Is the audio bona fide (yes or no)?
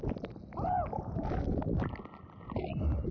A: yes